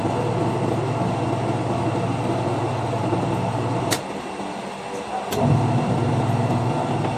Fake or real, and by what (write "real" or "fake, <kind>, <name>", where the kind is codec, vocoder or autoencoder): real